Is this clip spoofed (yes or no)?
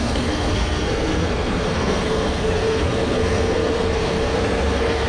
yes